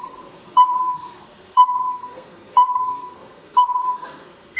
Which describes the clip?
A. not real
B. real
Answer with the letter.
A